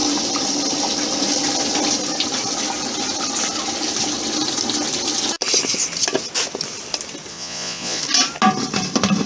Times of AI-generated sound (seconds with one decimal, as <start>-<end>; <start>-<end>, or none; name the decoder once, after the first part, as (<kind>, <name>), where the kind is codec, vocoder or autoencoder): 7.3-8.0 (vocoder, Vocos)